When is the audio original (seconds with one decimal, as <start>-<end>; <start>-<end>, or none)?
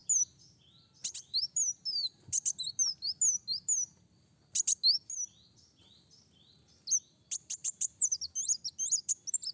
0.0-9.5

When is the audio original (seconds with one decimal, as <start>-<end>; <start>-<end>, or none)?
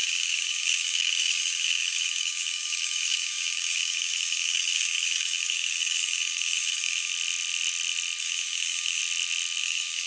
7.1-8.2; 9.0-9.6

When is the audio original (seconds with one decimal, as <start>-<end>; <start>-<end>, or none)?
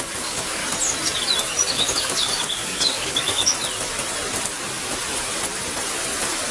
0.6-1.7; 3.5-6.5